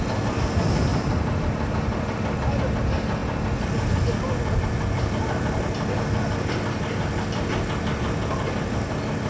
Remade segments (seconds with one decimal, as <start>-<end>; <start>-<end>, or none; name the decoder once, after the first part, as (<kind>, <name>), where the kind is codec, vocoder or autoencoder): 0.9-1.7 (vocoder, BigVGAN v2)